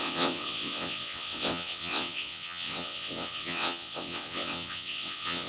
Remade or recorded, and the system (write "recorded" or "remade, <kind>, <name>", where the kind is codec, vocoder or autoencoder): remade, vocoder, WaveNeXt